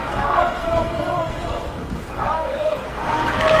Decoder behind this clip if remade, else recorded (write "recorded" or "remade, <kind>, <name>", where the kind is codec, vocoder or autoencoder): remade, codec, SNAC